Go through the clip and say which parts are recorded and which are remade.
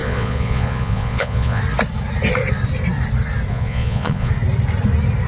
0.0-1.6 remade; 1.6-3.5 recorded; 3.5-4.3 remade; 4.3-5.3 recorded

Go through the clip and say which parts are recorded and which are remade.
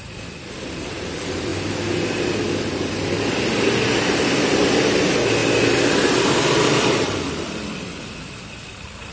0.0-1.5 remade; 1.5-2.6 recorded; 2.6-5.4 remade; 5.4-6.2 recorded; 6.2-9.1 remade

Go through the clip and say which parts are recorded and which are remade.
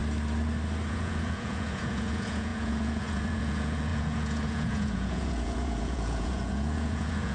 0.0-0.9 recorded; 0.9-7.3 remade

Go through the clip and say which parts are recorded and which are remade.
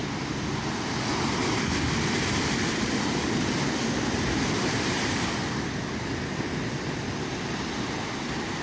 0.0-8.6 recorded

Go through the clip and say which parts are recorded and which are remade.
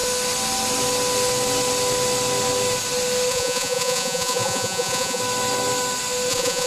0.0-3.3 recorded; 3.3-5.2 remade; 5.2-6.3 recorded; 6.3-6.7 remade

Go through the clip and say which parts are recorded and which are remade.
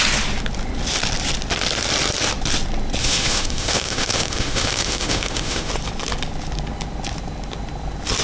0.0-3.0 recorded; 3.0-5.7 remade; 5.7-8.2 recorded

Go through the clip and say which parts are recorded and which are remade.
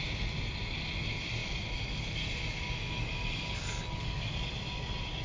0.0-5.2 recorded